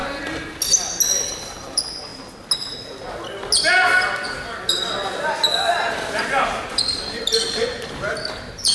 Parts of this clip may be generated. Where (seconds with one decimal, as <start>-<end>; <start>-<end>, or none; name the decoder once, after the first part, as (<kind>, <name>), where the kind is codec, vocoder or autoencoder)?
1.2-2.1 (vocoder, BigVGAN v2); 6.0-8.7